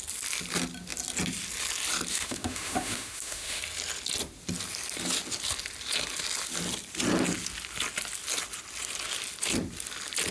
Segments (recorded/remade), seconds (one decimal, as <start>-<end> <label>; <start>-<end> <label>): 0.0-2.1 recorded; 2.1-3.6 remade; 3.6-10.3 recorded